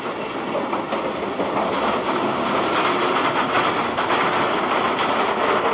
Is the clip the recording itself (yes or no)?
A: yes